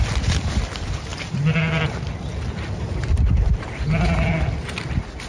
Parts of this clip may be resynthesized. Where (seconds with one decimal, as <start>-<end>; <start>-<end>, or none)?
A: none